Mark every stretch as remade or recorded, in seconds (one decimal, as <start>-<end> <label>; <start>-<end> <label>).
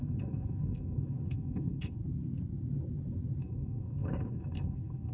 0.0-2.0 remade; 2.0-3.4 recorded; 3.4-5.1 remade